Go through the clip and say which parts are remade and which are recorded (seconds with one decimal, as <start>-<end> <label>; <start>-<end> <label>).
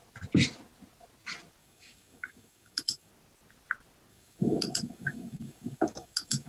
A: 0.0-1.6 recorded; 1.6-3.1 remade; 3.1-4.1 recorded; 4.1-6.5 remade